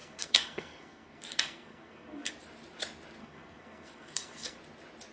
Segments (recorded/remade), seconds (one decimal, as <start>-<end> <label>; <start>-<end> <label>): 0.0-2.3 remade; 2.3-3.2 recorded; 3.2-4.6 remade; 4.6-5.1 recorded